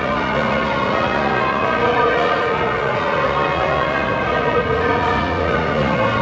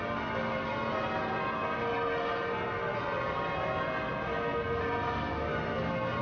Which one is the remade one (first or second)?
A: first